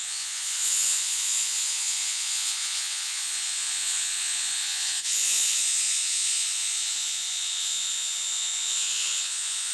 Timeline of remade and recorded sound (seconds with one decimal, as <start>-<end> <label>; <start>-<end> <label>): 0.0-9.7 remade